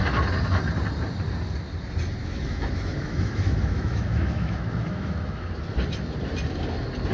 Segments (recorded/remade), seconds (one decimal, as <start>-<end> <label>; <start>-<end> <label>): 0.0-2.2 recorded; 2.2-5.4 remade; 5.4-7.1 recorded